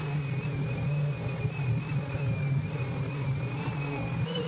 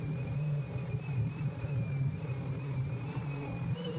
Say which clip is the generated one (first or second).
second